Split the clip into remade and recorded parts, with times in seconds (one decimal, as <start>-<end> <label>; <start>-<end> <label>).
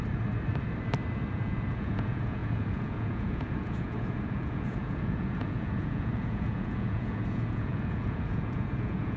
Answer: 0.0-1.3 recorded; 1.3-9.2 remade